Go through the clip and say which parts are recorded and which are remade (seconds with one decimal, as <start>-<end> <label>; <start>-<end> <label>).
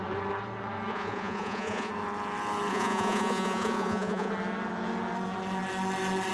0.0-0.9 recorded; 0.9-1.9 remade; 1.9-2.7 recorded; 2.7-4.3 remade; 4.3-6.3 recorded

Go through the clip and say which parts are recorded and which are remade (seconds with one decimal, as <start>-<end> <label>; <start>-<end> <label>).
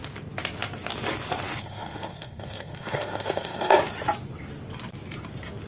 0.0-1.6 recorded; 1.6-3.8 remade; 3.8-5.7 recorded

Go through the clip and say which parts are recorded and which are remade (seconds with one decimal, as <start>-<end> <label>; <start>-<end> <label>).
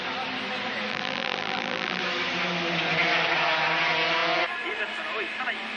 0.0-0.9 recorded; 0.9-2.0 remade; 2.0-5.8 recorded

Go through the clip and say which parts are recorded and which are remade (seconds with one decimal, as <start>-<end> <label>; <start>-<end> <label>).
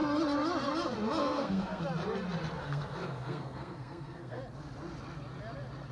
0.0-1.2 recorded; 1.2-1.8 remade; 1.8-2.6 recorded; 2.6-4.4 remade; 4.4-5.9 recorded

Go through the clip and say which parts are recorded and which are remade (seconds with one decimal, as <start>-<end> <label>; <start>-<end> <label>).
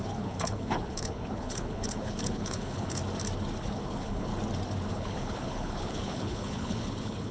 0.0-3.0 remade; 3.0-3.6 recorded; 3.6-4.3 remade; 4.3-4.9 recorded; 4.9-7.3 remade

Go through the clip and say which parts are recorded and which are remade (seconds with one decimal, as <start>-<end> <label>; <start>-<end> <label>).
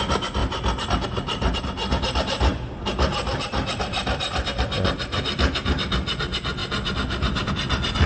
0.0-8.1 recorded